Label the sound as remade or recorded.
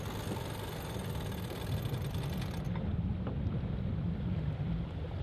recorded